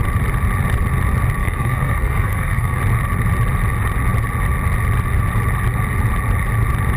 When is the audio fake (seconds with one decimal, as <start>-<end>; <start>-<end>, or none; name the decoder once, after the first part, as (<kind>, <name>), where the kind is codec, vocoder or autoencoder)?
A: 1.4-2.8 (codec, SNAC)